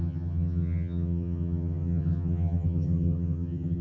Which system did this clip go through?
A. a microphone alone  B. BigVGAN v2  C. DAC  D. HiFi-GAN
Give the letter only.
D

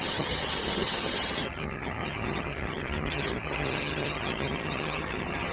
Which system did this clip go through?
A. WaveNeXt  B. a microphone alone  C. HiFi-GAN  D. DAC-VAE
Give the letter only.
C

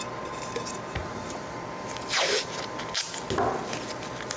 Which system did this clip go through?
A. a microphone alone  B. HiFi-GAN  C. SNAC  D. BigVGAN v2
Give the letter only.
A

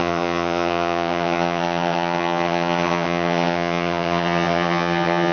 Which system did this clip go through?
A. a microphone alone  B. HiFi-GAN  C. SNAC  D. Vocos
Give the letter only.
B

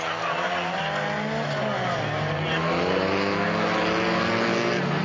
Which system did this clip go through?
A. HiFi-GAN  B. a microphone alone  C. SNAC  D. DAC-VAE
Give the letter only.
B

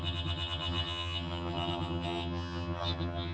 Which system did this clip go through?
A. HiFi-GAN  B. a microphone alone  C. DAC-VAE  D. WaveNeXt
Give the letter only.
A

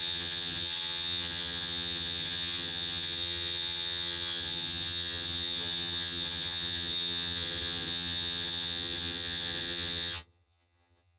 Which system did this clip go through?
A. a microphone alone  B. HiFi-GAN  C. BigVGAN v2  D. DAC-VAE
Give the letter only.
B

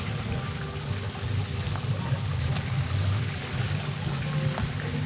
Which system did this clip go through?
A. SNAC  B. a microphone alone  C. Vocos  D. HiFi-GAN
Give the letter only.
B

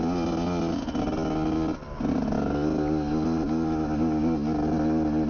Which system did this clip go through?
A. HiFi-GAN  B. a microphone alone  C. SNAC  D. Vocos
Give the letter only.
B